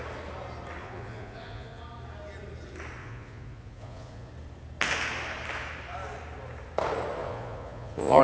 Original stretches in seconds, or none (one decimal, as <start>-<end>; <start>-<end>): 0.0-0.8; 1.8-3.0; 4.3-7.2